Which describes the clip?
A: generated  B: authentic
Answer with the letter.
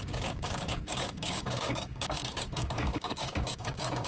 A